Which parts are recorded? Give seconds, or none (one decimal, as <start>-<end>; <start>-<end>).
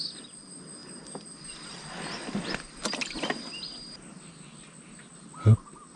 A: 0.0-6.0